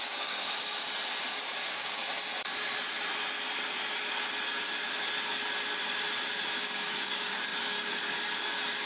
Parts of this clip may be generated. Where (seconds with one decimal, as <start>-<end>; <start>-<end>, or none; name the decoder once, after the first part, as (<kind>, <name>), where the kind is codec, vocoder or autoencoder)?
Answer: 0.0-0.4 (codec, DAC); 1.3-2.0; 6.6-8.9